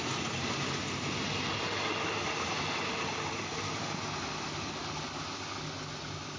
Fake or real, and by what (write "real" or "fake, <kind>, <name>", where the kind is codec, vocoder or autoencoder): real